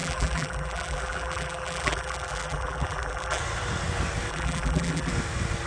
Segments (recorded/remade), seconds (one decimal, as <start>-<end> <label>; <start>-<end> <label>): 0.0-3.4 remade; 3.4-4.3 recorded; 4.3-5.1 remade; 5.1-5.7 recorded